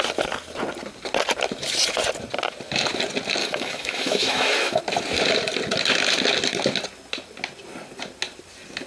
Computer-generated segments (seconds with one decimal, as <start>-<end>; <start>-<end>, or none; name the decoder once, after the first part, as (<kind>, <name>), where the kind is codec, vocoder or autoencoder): 3.4-4.8 (autoencoder, DAC-VAE)